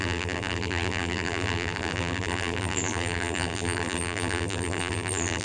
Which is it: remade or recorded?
remade